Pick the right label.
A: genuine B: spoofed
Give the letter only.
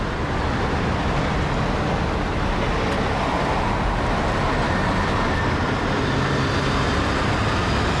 A